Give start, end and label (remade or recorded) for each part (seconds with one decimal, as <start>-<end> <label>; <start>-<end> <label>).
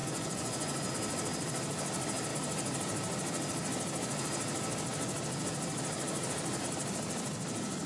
0.0-0.9 remade; 0.9-7.9 recorded